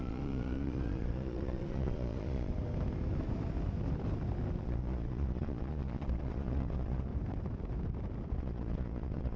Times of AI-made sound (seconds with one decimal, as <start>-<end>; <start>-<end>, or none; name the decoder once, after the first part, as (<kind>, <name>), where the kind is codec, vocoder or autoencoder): 0.0-2.5 (vocoder, Vocos); 4.6-7.1; 8.4-9.4